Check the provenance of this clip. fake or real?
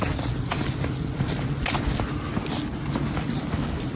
real